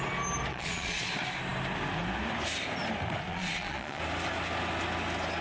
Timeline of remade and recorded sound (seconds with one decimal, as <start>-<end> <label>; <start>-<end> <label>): 0.0-0.5 recorded; 0.5-1.1 remade; 1.1-3.3 recorded; 3.3-4.0 remade; 4.0-5.4 recorded